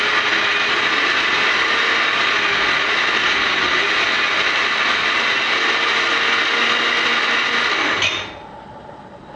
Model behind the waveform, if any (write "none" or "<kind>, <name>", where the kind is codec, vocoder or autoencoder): none